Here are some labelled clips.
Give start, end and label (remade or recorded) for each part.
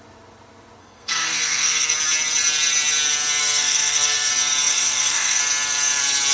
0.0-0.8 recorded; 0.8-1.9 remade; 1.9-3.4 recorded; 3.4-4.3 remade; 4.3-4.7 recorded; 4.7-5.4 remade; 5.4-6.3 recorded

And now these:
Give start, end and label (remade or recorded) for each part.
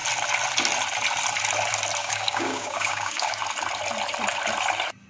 0.0-2.0 recorded; 2.0-3.4 remade; 3.4-5.1 recorded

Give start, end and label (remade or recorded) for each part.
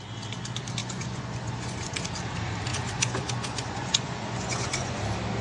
0.0-0.8 recorded; 0.8-1.9 remade; 1.9-2.7 recorded; 2.7-5.0 remade; 5.0-5.4 recorded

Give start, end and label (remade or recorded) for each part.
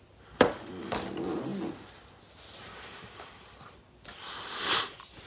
0.0-5.3 recorded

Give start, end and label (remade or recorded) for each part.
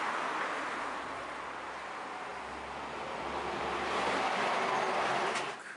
0.0-5.8 recorded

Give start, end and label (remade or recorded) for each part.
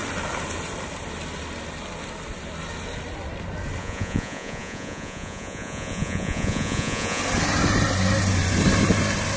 0.0-3.8 recorded; 3.8-7.2 remade; 7.2-9.4 recorded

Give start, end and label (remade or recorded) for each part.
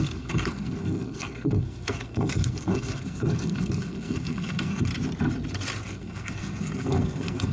0.0-4.9 remade; 4.9-5.8 recorded; 5.8-7.5 remade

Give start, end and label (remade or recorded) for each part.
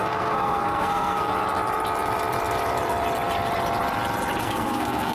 0.0-1.3 remade; 1.3-4.4 recorded; 4.4-5.1 remade